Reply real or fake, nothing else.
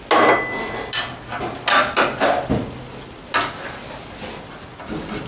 real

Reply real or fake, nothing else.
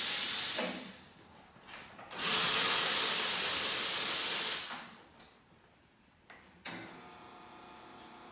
real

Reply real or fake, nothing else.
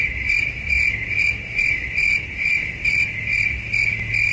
real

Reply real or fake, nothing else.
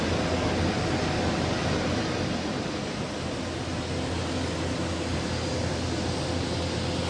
real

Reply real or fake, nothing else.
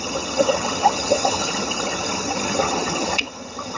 fake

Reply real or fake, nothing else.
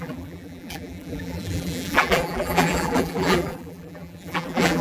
fake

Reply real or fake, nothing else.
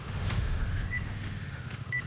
fake